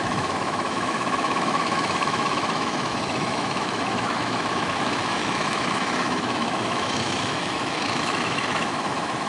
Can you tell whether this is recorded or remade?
remade